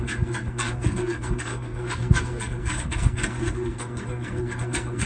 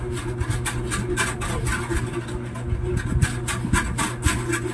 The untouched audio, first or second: second